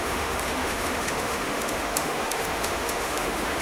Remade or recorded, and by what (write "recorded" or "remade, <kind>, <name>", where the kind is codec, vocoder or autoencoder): remade, autoencoder, DAC-VAE